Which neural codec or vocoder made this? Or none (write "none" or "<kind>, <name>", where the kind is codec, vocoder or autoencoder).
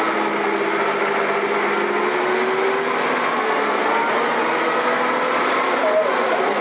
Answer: none